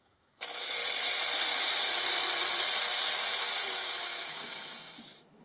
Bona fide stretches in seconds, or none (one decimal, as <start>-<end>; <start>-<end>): 0.8-4.0